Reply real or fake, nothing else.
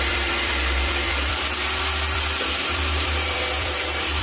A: fake